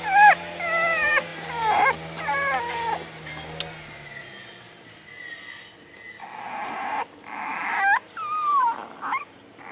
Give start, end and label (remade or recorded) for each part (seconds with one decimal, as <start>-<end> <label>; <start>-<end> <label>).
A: 0.0-9.7 recorded